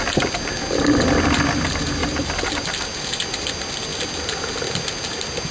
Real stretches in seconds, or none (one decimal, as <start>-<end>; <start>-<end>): 0.0-2.0; 2.6-5.5